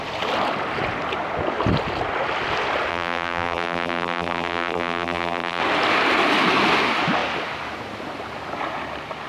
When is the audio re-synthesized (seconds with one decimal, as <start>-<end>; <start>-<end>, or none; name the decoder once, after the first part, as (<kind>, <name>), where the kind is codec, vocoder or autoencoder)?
2.9-5.6 (vocoder, BigVGAN v2)